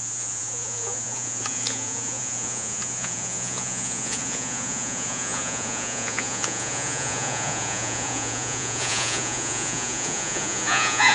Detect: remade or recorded remade